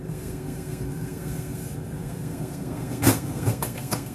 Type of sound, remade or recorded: remade